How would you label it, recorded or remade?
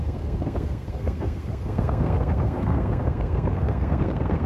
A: remade